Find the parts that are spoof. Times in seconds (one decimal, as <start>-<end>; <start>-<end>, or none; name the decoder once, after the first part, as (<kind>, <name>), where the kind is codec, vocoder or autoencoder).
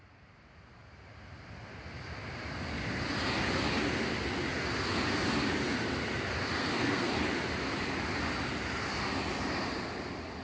6.6-7.1 (codec, SNAC)